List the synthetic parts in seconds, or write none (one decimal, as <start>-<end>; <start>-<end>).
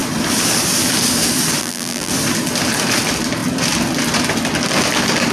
1.6-2.1